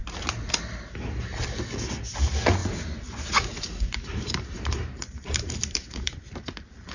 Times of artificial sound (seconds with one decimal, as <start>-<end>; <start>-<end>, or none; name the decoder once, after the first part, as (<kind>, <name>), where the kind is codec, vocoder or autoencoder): 2.6-6.2 (vocoder, BigVGAN v2)